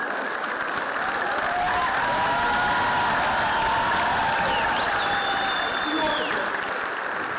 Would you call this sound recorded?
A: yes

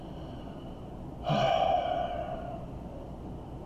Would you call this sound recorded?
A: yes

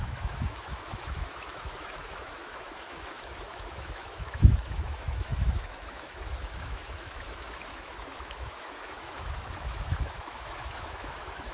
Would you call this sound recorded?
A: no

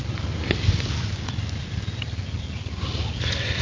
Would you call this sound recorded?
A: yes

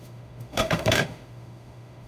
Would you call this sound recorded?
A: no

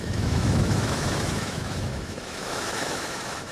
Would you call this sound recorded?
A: no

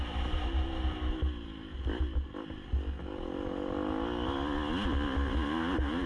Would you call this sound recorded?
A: yes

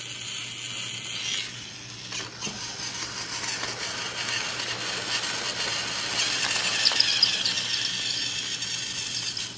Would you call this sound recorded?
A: yes